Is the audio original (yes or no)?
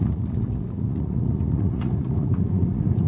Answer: no